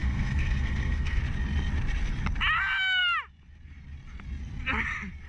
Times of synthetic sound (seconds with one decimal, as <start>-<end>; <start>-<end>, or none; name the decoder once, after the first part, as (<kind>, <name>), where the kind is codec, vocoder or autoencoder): 0.0-1.2 (codec, SNAC)